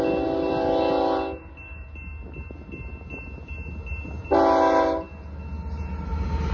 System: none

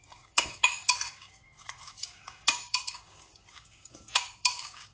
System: codec, DAC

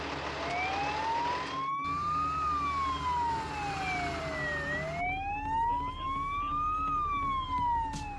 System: none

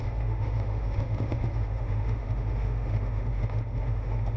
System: autoencoder, DAC-VAE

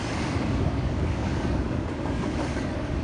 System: codec, DAC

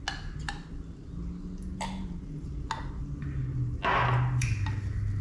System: none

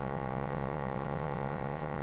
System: vocoder, WaveNeXt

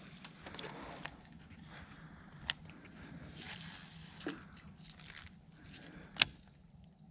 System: none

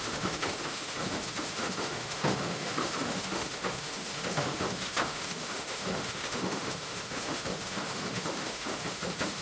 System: autoencoder, DAC-VAE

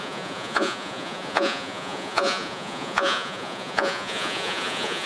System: vocoder, Vocos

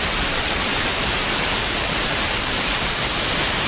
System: vocoder, BigVGAN v2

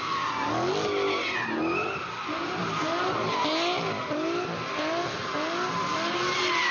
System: none